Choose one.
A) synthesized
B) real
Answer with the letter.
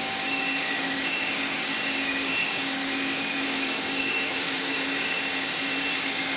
A